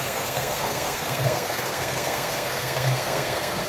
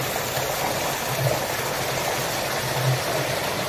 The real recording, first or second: second